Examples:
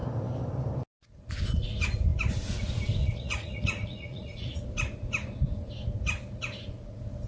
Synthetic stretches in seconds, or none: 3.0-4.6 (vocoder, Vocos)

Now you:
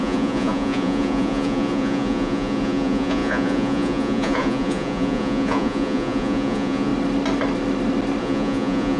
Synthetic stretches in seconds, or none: 0.0-6.9 (vocoder, Vocos); 8.2-9.0